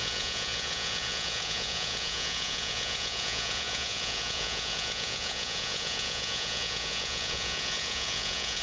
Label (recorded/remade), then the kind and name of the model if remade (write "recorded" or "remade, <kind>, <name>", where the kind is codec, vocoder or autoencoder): remade, vocoder, Vocos